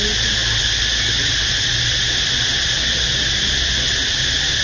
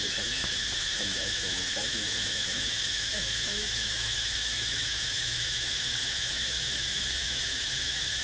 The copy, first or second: second